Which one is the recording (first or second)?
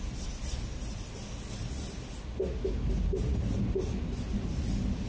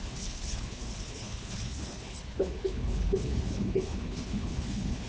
first